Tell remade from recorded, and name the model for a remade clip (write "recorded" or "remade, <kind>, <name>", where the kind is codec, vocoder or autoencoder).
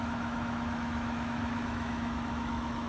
remade, autoencoder, DAC-VAE